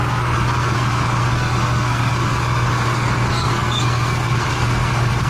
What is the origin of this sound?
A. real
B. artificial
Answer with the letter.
B